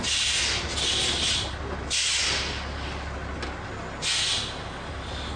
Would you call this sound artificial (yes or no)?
no